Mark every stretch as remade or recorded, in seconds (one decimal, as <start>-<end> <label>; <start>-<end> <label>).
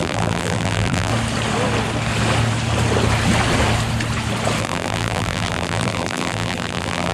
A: 0.0-1.1 remade; 1.1-4.6 recorded; 4.6-7.1 remade